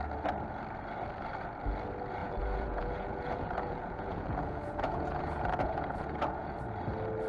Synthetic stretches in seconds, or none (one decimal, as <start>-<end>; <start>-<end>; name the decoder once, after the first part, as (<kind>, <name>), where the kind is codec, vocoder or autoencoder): 2.2-6.6 (vocoder, Vocos)